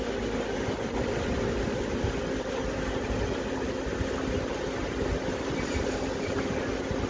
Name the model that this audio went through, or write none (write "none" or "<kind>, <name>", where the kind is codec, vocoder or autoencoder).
none